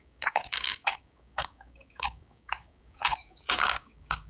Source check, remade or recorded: remade